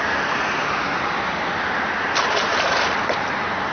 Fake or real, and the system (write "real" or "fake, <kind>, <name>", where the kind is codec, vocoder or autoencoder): real